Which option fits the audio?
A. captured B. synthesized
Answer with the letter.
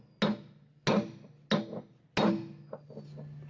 A